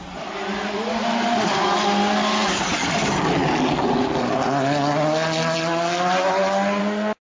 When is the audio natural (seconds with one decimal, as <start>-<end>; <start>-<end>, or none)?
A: 0.0-7.4

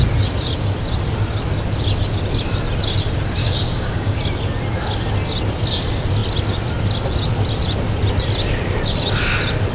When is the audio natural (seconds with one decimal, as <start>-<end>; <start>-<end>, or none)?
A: 0.0-3.4; 4.2-9.7

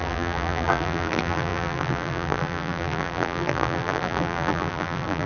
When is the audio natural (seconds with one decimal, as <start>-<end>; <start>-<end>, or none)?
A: none

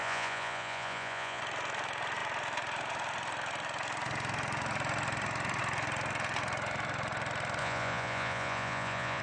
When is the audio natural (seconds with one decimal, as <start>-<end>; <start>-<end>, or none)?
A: 1.4-7.6

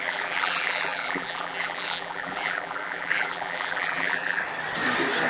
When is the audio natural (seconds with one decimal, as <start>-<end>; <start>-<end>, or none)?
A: 4.4-5.3

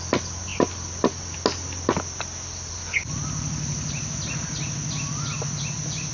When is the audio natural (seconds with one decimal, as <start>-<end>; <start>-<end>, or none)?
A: 0.0-6.1

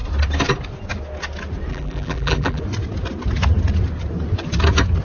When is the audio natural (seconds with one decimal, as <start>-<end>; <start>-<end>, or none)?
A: 0.0-1.7; 2.6-5.0

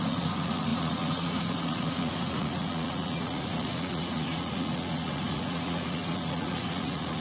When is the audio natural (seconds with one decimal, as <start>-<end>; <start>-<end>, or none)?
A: none